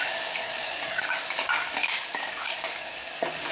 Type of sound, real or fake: fake